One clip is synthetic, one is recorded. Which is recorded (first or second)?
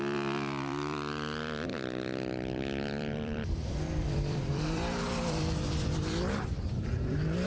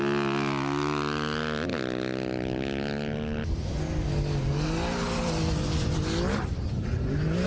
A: second